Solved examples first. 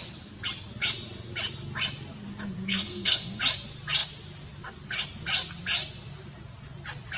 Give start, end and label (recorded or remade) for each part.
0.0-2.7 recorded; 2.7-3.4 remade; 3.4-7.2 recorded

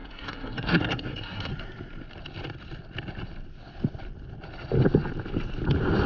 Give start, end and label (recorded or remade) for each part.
0.0-1.5 remade; 1.5-6.1 recorded

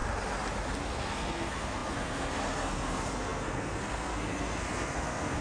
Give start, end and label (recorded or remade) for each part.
0.0-0.9 recorded; 0.9-5.4 remade

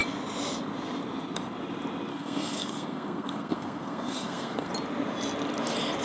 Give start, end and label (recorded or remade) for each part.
0.0-2.1 recorded; 2.1-4.7 remade; 4.7-6.0 recorded

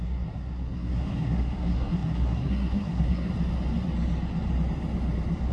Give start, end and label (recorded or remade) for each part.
0.0-3.3 remade; 3.3-5.5 recorded